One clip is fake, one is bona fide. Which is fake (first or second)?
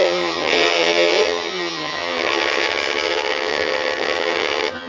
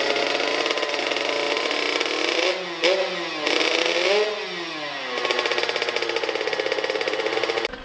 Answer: first